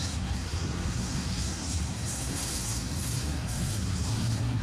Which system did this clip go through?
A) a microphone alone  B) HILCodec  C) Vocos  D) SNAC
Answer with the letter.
D